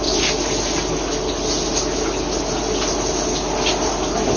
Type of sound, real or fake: real